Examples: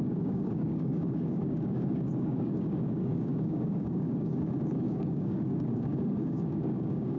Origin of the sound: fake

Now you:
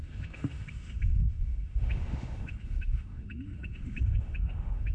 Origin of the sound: fake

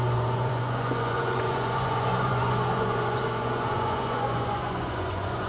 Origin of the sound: fake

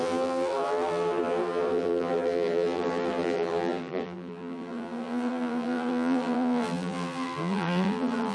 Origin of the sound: fake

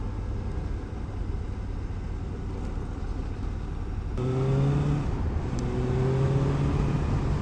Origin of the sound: real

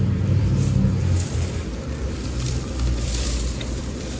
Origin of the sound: fake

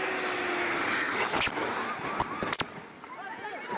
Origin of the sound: real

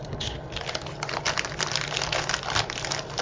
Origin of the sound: real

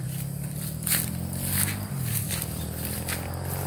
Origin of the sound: real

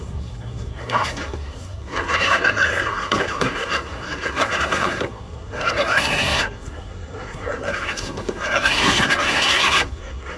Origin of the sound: fake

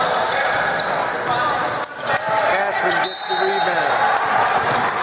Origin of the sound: real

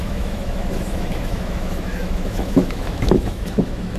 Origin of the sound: fake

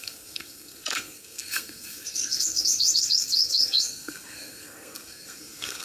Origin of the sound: fake